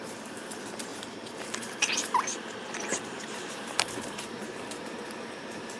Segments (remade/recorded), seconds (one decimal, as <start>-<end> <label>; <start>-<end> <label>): 0.0-5.8 remade